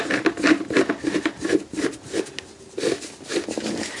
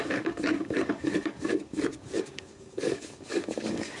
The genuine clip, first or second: first